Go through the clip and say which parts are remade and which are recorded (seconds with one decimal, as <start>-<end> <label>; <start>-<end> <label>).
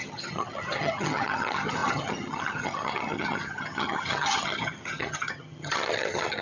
0.0-6.4 remade